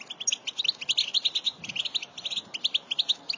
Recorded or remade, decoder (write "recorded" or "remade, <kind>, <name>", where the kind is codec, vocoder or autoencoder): recorded